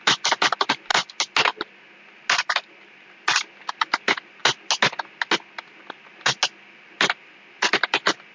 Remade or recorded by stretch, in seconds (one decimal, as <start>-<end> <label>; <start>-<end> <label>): 0.0-8.3 recorded